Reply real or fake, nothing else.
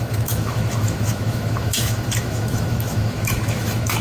fake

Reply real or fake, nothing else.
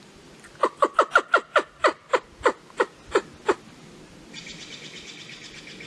real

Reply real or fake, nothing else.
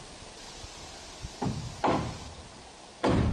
real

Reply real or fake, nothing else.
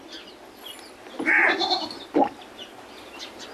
real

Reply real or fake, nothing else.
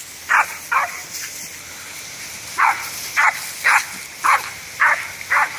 real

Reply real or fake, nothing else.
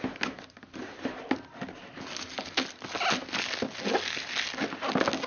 real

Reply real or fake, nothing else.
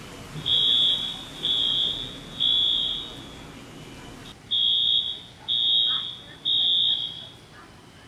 real